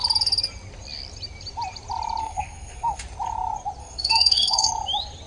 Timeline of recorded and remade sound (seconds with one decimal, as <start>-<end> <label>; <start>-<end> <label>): 0.0-2.2 recorded; 2.2-3.0 remade; 3.0-3.8 recorded; 3.8-4.7 remade; 4.7-5.3 recorded